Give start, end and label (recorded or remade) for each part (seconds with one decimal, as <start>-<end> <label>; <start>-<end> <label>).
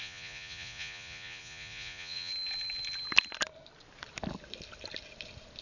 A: 0.0-2.3 remade; 2.3-5.6 recorded